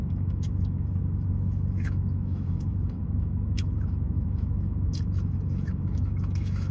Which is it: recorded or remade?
remade